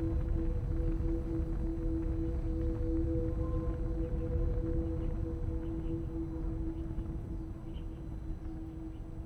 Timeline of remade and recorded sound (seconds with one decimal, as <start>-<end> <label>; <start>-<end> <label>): 0.0-9.3 recorded